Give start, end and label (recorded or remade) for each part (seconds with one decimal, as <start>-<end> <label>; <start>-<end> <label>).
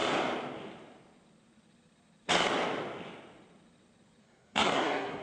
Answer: 0.0-4.2 recorded; 4.2-5.2 remade